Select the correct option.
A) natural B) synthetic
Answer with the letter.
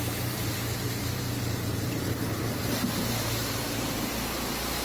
B